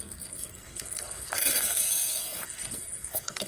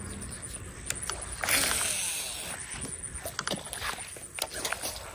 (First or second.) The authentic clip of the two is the second